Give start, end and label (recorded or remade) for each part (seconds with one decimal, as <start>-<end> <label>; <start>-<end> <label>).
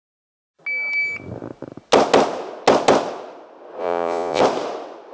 0.0-3.8 recorded; 3.8-4.4 remade; 4.4-5.1 recorded